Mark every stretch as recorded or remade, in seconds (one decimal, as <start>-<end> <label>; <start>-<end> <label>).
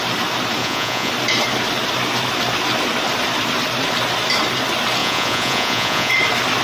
0.0-0.6 recorded; 0.6-1.1 remade; 1.1-5.0 recorded; 5.0-6.1 remade; 6.1-6.6 recorded